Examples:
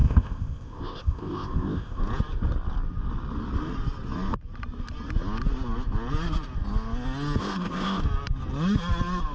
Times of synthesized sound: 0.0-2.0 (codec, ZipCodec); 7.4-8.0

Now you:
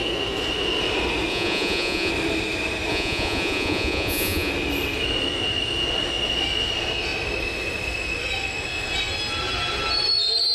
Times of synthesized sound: 1.3-2.1 (vocoder, Vocos); 2.9-4.5